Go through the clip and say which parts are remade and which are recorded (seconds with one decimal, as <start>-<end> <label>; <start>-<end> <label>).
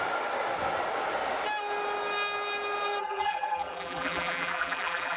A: 0.0-3.0 recorded; 3.0-5.2 remade